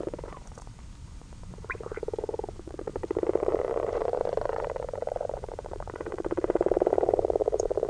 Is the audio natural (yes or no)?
no